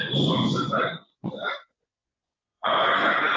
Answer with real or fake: fake